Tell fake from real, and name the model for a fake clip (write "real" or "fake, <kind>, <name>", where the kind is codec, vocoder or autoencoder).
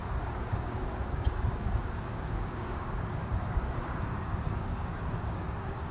fake, codec, DAC